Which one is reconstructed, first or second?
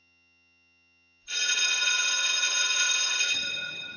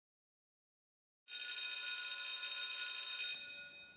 first